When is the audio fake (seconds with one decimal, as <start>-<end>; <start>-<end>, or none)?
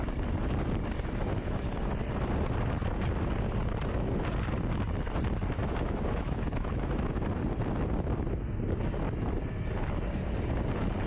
5.6-7.2